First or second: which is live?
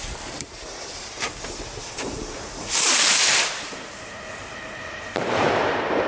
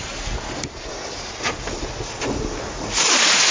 second